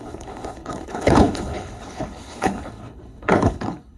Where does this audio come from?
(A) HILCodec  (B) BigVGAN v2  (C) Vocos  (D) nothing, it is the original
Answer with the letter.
A